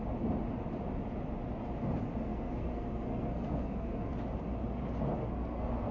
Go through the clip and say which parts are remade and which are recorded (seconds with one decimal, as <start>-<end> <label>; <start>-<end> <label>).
0.0-2.3 recorded; 2.3-4.1 remade; 4.1-5.2 recorded; 5.2-5.9 remade